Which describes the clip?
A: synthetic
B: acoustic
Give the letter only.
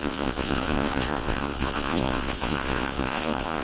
A